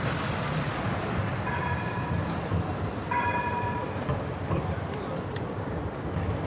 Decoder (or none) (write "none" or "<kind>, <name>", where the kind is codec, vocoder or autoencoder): vocoder, BigVGAN v2